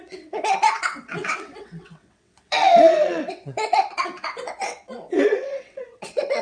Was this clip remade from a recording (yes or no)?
yes